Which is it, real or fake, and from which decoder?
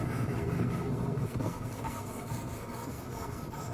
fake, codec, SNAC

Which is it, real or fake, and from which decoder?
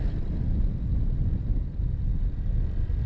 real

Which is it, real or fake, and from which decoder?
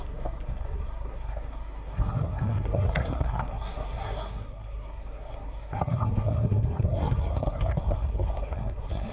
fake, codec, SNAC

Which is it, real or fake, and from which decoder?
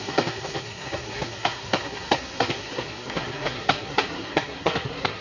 fake, codec, SNAC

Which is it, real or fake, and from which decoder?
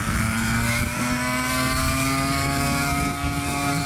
fake, codec, SNAC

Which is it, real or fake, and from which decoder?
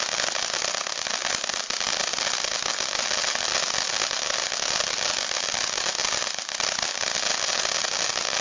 real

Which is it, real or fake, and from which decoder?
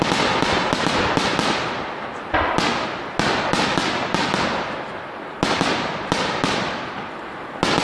real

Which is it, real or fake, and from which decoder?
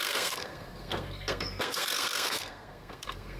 fake, codec, SNAC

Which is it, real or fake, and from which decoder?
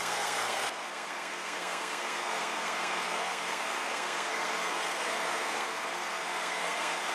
fake, codec, SNAC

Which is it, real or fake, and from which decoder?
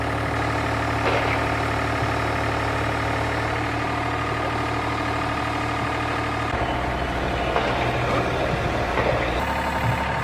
real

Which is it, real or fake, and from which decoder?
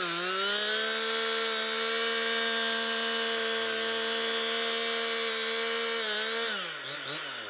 real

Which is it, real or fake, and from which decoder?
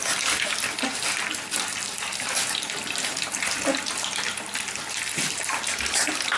real